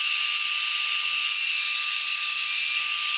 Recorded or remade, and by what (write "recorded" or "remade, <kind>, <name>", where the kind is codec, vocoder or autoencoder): recorded